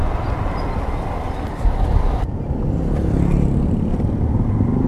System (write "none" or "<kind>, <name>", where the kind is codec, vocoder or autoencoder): none